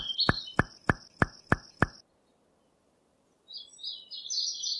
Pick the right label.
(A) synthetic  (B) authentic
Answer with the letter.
B